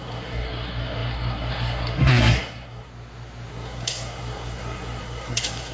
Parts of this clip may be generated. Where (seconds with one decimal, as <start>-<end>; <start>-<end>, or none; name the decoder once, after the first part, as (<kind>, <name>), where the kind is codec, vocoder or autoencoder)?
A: 0.0-2.9 (codec, SNAC); 3.5-5.7